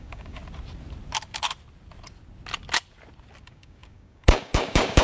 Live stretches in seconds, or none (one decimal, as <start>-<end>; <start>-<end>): 0.4-3.4